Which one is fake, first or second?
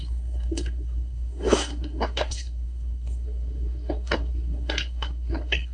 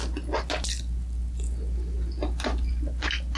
first